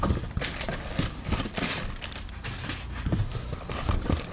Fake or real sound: real